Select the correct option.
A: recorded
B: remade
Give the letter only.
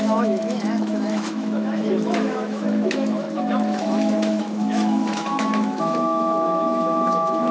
B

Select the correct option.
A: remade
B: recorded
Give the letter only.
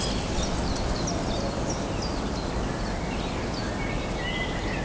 B